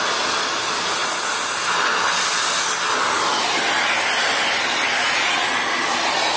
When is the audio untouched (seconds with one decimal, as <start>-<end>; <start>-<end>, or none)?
0.0-6.4